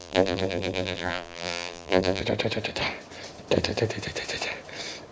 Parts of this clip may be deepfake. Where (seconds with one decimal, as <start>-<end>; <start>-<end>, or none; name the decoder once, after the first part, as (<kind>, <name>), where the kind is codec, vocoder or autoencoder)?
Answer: 0.0-2.2 (vocoder, BigVGAN v2)